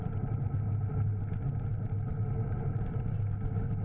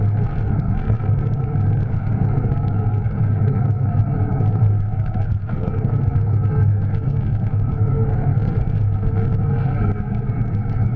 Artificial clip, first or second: second